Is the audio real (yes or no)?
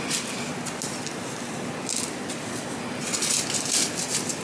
yes